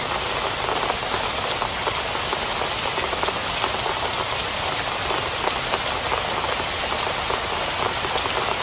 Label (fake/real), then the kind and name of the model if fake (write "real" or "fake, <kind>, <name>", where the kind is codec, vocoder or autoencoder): real